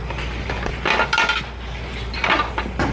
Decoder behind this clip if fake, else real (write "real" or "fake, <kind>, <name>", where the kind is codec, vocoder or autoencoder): real